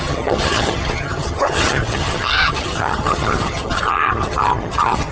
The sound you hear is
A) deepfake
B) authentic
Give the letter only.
A